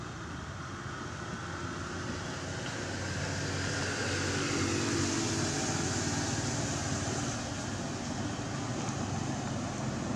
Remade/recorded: recorded